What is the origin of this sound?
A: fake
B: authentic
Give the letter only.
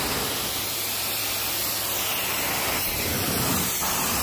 B